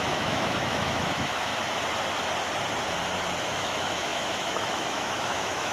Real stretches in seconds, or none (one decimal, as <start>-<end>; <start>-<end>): 1.5-3.4